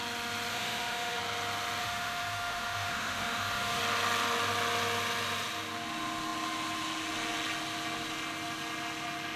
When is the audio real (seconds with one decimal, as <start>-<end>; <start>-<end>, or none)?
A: 0.0-0.5; 1.2-1.8; 3.8-9.4